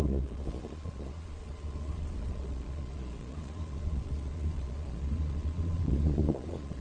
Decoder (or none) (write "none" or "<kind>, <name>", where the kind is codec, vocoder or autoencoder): vocoder, Vocos